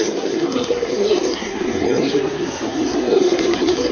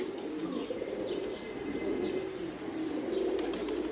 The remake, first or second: first